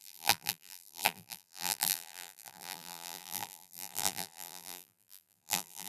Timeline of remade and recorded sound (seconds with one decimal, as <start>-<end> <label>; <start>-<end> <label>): 0.0-5.9 remade